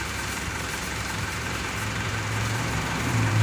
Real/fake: fake